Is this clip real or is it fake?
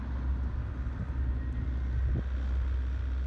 real